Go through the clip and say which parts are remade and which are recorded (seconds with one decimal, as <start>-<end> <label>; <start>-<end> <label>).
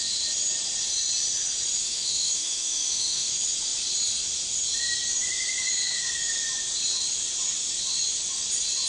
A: 0.0-1.8 recorded; 1.8-3.3 remade; 3.3-8.9 recorded